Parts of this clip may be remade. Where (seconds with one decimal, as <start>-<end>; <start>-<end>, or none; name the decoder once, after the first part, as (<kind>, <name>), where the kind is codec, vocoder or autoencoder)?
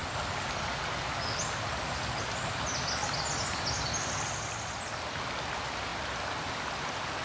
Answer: none